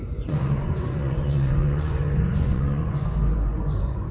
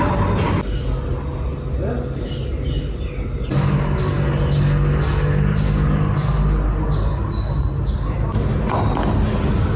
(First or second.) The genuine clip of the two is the second